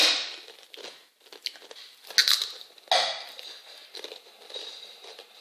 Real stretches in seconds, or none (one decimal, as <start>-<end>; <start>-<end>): 0.0-5.4